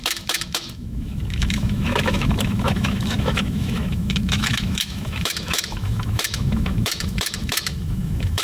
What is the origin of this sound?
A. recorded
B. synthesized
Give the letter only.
B